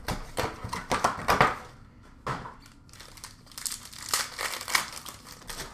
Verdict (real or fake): real